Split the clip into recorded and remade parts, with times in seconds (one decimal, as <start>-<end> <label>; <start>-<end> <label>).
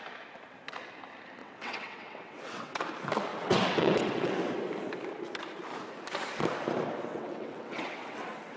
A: 0.0-1.4 recorded; 1.4-2.8 remade; 2.8-3.3 recorded; 3.3-4.5 remade; 4.5-7.1 recorded; 7.1-8.6 remade